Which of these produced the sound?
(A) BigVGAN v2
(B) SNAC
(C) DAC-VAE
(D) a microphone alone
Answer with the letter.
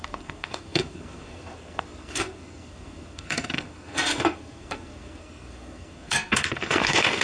B